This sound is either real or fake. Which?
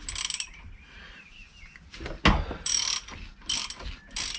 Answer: real